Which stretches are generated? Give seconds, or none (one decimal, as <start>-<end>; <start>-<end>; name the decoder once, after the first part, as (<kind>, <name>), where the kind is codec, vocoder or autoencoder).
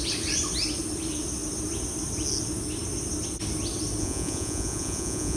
4.0-5.4 (vocoder, Vocos)